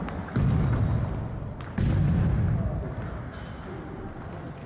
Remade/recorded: recorded